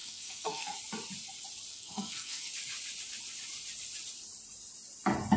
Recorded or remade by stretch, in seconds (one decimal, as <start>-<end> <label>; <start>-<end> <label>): 0.0-0.8 remade; 0.8-1.7 recorded; 1.7-2.5 remade; 2.5-5.4 recorded